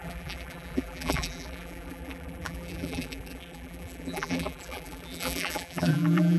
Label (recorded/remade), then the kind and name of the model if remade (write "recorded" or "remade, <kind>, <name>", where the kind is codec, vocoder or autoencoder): remade, vocoder, BigVGAN v2